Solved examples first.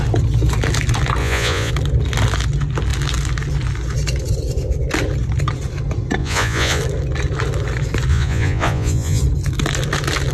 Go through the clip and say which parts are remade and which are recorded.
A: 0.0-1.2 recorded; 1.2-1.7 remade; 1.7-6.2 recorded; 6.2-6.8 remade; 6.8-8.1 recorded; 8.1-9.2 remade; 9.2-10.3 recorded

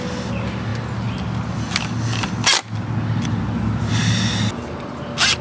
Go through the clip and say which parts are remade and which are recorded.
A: 0.0-5.4 recorded

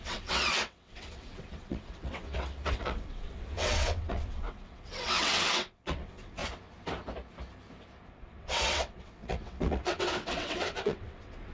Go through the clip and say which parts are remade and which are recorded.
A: 0.0-6.4 remade; 6.4-8.1 recorded; 8.1-11.5 remade

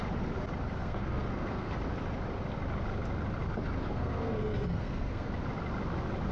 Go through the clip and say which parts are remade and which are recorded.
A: 0.0-0.8 recorded; 0.8-1.7 remade; 1.7-3.8 recorded; 3.8-5.3 remade; 5.3-6.3 recorded